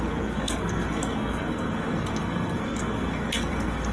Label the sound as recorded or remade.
remade